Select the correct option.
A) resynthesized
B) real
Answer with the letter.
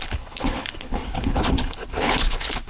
A